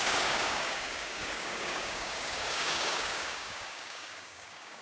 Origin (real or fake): fake